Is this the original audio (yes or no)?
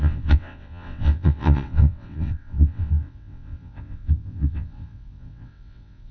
no